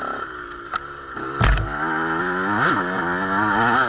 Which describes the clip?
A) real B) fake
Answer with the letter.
A